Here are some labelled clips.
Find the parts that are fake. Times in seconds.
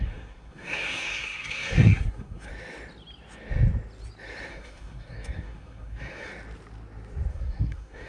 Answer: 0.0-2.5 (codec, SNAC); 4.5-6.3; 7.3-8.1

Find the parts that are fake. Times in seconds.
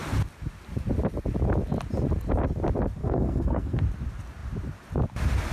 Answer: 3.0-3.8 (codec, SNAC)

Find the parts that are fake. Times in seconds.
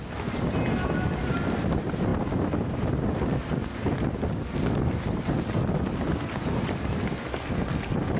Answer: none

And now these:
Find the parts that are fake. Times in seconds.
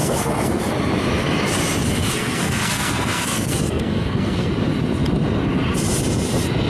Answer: 0.0-0.6 (codec, SNAC); 2.0-4.5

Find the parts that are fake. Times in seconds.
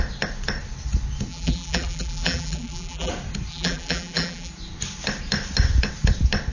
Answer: 1.3-3.1 (vocoder, BigVGAN v2); 3.5-4.5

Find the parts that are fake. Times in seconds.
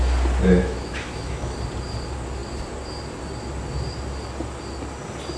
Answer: 0.6-1.5 (autoencoder, DAC-VAE)